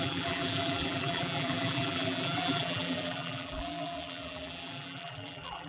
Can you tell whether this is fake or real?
fake